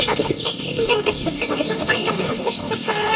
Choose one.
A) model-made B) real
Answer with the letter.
A